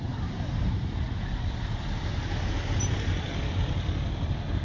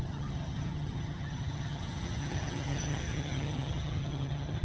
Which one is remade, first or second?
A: second